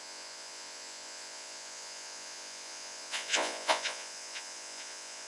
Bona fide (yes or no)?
no